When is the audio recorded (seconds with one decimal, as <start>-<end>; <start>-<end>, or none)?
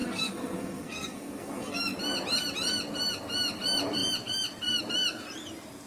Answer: 1.8-5.9